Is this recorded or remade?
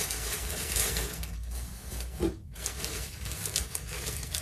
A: remade